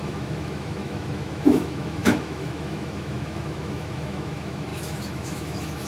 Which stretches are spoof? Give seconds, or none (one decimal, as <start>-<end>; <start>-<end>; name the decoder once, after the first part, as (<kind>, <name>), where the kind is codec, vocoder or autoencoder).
0.0-5.9 (autoencoder, DAC-VAE)